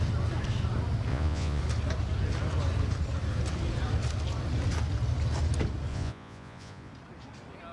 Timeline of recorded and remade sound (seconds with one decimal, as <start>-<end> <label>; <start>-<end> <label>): 0.0-1.1 recorded; 1.1-1.6 remade; 1.6-5.9 recorded; 5.9-6.9 remade; 6.9-7.7 recorded